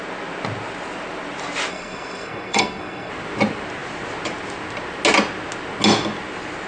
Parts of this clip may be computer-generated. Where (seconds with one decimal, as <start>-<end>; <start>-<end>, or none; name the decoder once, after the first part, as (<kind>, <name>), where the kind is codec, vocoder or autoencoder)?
1.7-3.1 (codec, SNAC)